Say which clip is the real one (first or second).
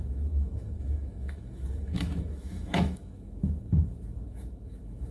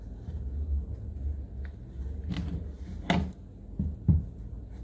second